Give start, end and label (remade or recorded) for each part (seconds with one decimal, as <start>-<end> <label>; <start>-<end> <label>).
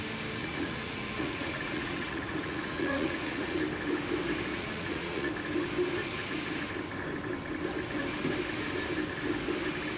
0.0-0.4 recorded; 0.4-3.6 remade; 3.6-4.5 recorded; 4.5-5.3 remade; 5.3-10.0 recorded